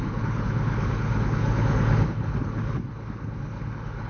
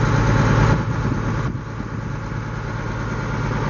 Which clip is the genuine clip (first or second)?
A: second